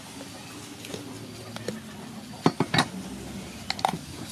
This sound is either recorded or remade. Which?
recorded